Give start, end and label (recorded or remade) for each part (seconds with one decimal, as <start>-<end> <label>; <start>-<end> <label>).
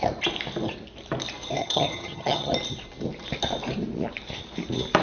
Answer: 0.0-1.6 recorded; 1.6-2.5 remade; 2.5-5.0 recorded